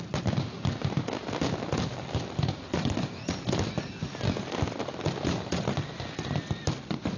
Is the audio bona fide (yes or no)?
yes